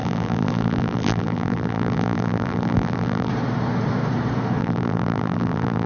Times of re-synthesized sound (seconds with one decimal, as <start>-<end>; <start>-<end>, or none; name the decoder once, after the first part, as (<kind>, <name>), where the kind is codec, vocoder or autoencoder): 0.0-3.3 (vocoder, BigVGAN v2); 4.6-5.9